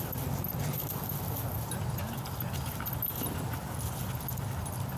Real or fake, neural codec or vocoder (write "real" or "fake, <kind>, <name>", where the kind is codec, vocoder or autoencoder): real